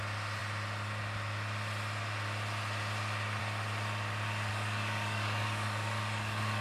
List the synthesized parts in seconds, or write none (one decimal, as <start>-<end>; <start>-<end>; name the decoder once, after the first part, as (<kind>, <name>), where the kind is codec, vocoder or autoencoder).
4.5-6.6 (codec, DAC)